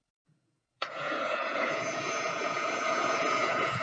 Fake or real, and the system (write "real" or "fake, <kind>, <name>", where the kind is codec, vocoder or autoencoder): fake, vocoder, Vocos